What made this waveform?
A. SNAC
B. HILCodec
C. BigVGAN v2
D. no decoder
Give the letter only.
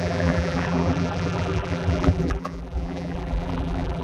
C